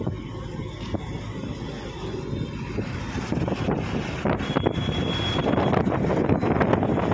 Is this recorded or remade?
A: recorded